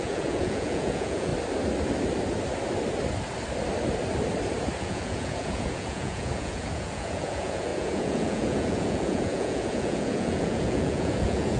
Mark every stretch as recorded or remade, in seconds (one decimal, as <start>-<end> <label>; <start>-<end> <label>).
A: 0.0-1.3 remade; 1.3-4.8 recorded; 4.8-11.6 remade